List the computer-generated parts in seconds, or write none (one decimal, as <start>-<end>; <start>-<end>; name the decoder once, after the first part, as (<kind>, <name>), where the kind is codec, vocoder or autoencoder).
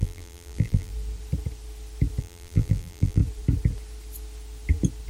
0.0-0.9 (vocoder, BigVGAN v2); 2.2-3.2